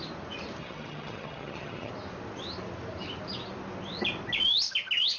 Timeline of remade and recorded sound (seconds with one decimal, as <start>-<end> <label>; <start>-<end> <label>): 0.0-0.6 recorded; 0.6-1.9 remade; 1.9-5.2 recorded